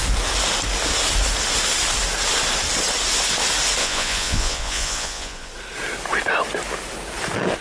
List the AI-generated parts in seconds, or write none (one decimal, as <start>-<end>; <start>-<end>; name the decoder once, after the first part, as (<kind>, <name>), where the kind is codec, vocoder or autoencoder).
3.8-5.5 (vocoder, Vocos)